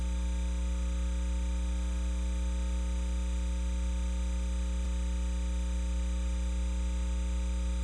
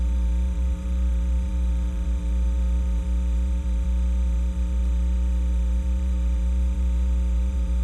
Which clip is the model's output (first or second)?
second